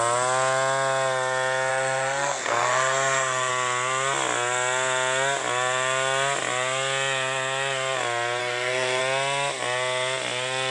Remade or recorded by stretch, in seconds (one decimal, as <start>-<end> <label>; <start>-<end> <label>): 0.0-1.7 recorded; 1.7-3.5 remade; 3.5-8.4 recorded; 8.4-9.0 remade; 9.0-10.7 recorded